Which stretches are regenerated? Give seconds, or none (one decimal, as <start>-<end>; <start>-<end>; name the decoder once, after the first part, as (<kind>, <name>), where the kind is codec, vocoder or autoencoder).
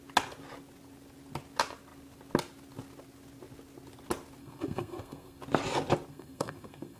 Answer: 4.4-5.4 (codec, SNAC); 6.1-7.0